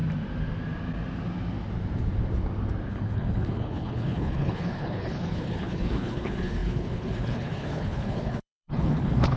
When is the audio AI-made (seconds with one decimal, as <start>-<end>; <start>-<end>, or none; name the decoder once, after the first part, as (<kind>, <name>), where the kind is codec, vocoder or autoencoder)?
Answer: 2.9-9.4 (codec, HILCodec)